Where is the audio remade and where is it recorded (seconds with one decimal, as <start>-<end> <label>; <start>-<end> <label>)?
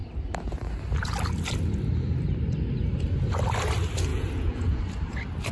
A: 0.0-4.1 recorded; 4.1-4.8 remade; 4.8-5.5 recorded